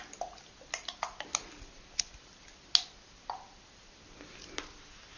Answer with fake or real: real